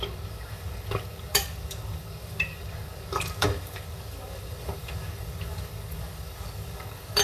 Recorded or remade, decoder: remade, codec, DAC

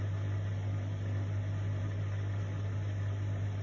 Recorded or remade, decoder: recorded